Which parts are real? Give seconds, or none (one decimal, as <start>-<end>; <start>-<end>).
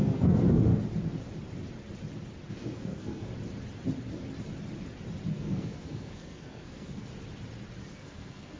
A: 0.7-2.5; 3.3-5.3; 7.1-7.8